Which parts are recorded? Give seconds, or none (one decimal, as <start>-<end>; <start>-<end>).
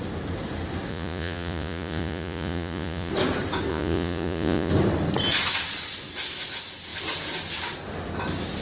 0.0-0.9; 3.1-3.7; 4.7-8.6